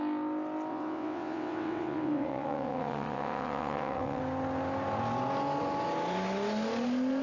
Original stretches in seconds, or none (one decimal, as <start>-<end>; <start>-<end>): 0.0-0.7; 4.2-7.2